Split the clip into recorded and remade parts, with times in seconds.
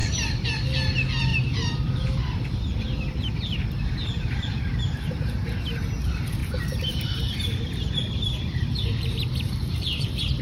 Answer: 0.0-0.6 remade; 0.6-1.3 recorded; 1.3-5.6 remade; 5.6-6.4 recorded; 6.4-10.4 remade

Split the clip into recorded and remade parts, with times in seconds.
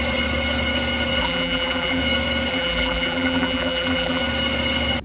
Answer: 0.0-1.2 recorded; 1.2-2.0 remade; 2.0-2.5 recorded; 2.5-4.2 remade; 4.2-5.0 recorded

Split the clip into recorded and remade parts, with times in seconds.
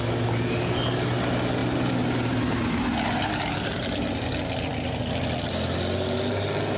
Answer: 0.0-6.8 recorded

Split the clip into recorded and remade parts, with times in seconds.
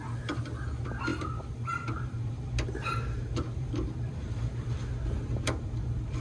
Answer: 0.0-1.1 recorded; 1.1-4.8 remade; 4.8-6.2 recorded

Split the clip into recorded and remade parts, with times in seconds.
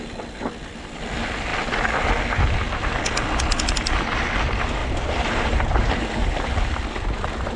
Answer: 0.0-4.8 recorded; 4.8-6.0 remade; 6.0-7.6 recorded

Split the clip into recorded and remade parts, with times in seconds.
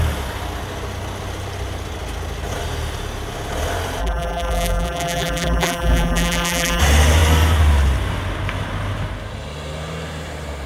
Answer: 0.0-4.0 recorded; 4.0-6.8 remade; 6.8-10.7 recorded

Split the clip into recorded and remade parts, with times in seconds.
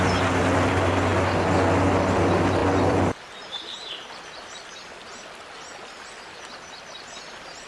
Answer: 0.0-7.7 recorded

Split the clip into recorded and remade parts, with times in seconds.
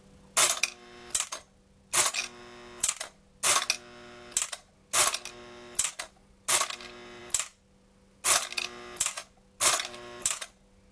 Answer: 0.0-10.9 recorded